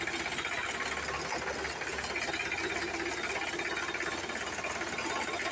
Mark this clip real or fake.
real